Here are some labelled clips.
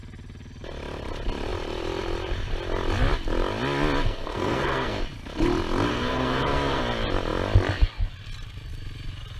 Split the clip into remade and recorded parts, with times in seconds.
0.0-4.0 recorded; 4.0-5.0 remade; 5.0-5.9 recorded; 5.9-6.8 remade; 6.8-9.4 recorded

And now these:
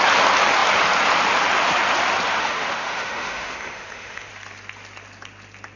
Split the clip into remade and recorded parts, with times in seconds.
0.0-2.4 recorded; 2.4-4.3 remade; 4.3-5.8 recorded